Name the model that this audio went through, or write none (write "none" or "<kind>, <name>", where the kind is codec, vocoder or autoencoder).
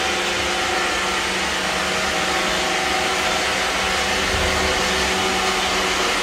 none